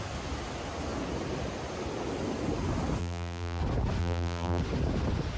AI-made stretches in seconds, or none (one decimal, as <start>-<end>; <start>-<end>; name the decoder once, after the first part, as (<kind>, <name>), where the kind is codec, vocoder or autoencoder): 3.0-3.6 (vocoder, BigVGAN v2); 4.0-4.6